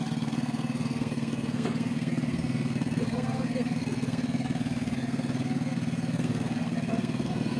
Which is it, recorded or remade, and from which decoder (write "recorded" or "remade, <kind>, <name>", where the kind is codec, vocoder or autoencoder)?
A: remade, codec, SNAC